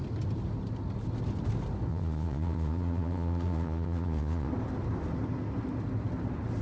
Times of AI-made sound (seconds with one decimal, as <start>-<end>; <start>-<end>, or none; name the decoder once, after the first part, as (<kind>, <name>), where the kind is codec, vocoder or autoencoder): 1.9-4.5 (vocoder, Vocos)